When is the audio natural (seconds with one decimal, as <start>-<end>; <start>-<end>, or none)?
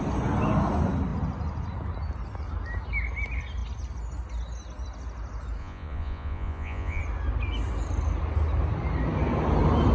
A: 0.0-5.6; 7.0-9.9